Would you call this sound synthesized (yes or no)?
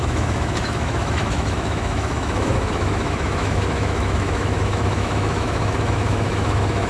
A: yes